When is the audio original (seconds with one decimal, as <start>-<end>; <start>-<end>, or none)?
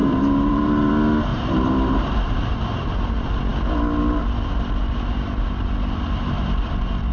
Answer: 0.9-1.3; 2.5-7.1